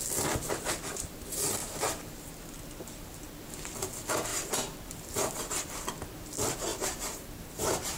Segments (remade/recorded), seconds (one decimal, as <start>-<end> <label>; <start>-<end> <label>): 0.0-4.3 recorded; 4.3-5.9 remade; 5.9-6.7 recorded; 6.7-8.0 remade